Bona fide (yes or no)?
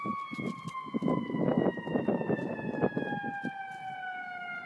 yes